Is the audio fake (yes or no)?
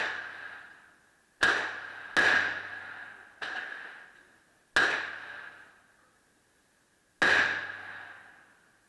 no